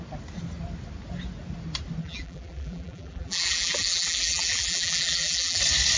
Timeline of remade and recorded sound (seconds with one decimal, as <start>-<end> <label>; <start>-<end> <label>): 0.0-2.0 recorded; 2.0-5.6 remade; 5.6-6.0 recorded